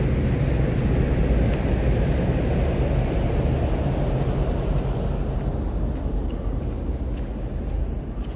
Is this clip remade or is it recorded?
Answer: recorded